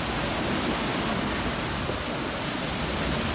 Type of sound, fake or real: real